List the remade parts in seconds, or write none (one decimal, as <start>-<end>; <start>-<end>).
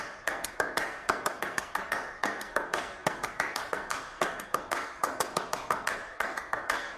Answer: 0.0-7.0